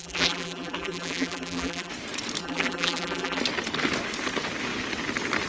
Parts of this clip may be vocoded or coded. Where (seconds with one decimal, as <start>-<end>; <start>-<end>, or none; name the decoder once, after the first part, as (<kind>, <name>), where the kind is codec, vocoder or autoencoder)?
0.0-1.9 (vocoder, BigVGAN v2); 2.4-3.4